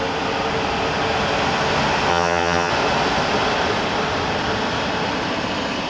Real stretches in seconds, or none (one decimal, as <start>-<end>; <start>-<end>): 0.0-2.1; 2.7-5.9